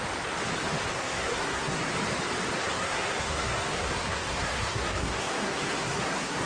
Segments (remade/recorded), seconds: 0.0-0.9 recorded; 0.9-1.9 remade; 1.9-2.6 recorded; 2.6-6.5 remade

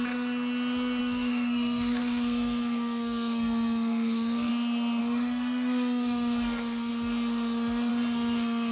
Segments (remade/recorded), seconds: 0.0-1.0 recorded; 1.0-4.5 remade; 4.5-5.0 recorded; 5.0-6.9 remade; 6.9-7.9 recorded; 7.9-8.7 remade